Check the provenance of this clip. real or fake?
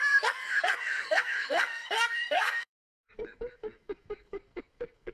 fake